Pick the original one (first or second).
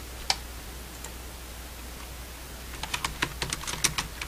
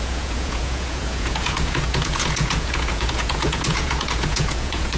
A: first